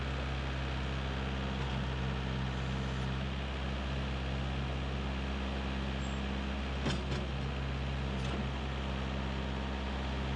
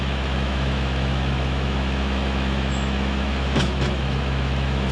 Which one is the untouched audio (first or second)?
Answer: first